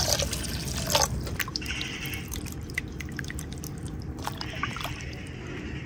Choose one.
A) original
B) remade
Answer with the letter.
B